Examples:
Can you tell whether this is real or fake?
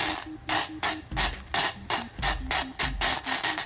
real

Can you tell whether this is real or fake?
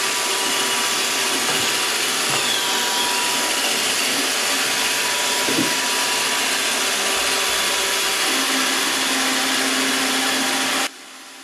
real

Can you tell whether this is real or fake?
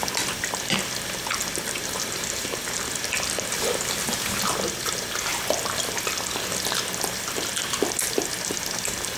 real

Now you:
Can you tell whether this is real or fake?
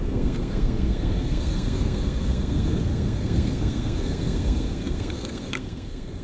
fake